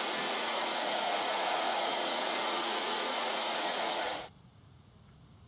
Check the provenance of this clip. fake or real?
fake